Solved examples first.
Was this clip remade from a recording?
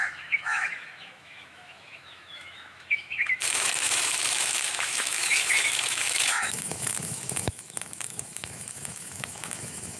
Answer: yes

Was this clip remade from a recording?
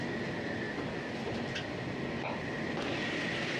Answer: no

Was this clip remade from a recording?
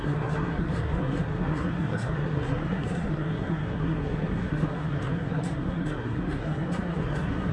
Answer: yes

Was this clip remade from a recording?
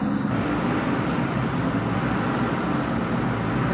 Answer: no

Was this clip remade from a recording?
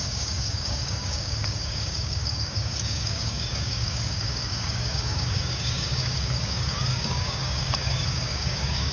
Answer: yes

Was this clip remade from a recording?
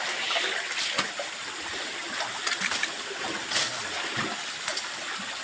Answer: no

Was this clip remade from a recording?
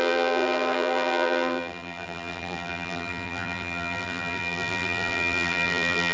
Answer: yes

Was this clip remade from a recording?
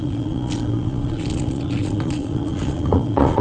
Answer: yes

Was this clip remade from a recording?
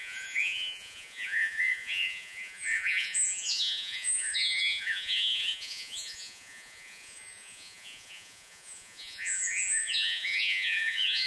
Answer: yes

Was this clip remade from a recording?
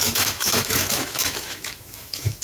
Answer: yes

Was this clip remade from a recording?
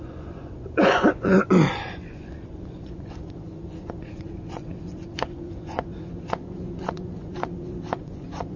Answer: yes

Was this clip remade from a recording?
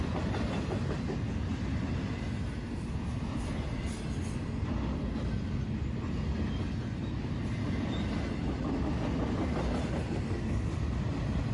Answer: no